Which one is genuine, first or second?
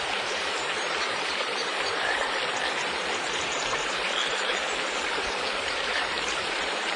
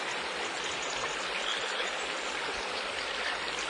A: second